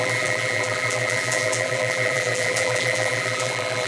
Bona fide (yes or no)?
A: no